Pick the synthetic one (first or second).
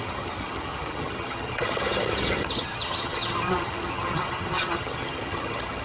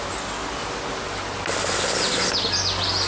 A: first